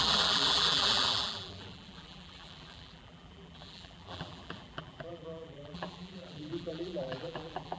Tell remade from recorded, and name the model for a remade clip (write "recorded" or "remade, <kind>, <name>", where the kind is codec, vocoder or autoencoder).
remade, vocoder, BigVGAN v2